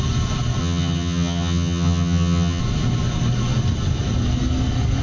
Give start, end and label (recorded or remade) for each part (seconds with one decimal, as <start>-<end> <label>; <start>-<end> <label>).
0.0-0.6 recorded; 0.6-2.6 remade; 2.6-5.0 recorded